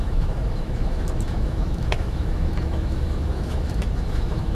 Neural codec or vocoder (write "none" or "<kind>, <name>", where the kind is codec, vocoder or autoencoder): autoencoder, DAC-VAE